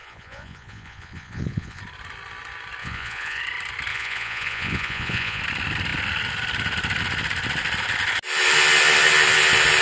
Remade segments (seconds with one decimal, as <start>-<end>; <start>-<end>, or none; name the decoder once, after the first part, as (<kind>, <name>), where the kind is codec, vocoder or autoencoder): 0.0-1.8 (vocoder, Vocos); 2.8-3.4; 3.9-5.4